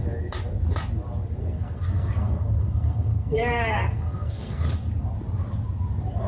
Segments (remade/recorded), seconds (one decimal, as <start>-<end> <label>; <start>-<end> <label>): 0.0-1.4 recorded; 1.4-4.7 remade; 4.7-6.3 recorded